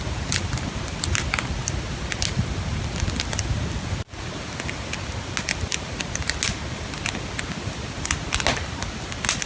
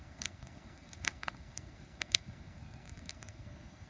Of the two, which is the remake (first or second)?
second